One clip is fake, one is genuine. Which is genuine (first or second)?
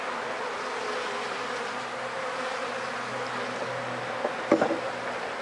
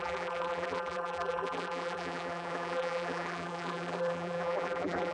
first